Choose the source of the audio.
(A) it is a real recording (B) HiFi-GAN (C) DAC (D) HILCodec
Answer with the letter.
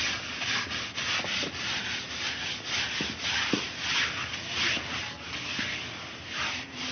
A